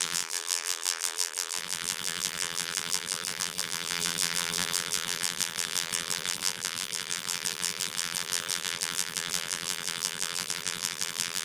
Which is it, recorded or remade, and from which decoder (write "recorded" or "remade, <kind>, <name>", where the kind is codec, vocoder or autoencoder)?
remade, vocoder, BigVGAN v2